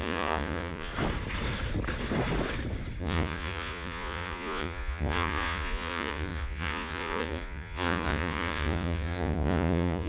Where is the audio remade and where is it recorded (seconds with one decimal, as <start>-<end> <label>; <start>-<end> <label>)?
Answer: 0.0-0.9 remade; 0.9-3.0 recorded; 3.0-10.1 remade